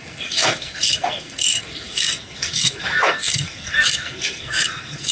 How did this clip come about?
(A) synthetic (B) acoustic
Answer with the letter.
A